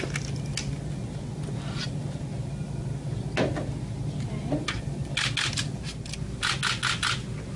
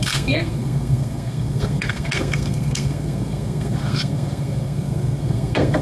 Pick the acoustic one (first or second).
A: first